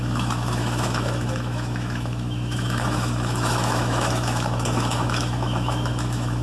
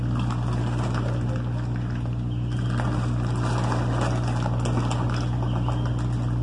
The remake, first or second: first